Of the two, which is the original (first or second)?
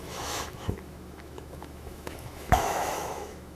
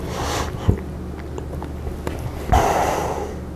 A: second